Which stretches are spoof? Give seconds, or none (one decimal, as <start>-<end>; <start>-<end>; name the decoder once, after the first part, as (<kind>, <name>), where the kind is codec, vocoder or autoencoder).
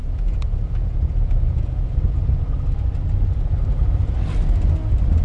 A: 0.0-2.2 (vocoder, Vocos)